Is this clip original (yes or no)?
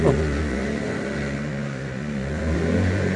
no